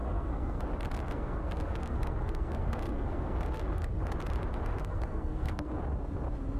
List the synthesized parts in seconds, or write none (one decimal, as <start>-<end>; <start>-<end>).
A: 0.0-0.6; 1.0-3.9; 4.8-5.8